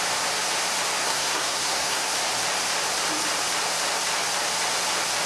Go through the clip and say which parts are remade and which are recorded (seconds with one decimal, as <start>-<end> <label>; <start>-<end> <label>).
0.0-1.0 recorded; 1.0-2.1 remade; 2.1-5.3 recorded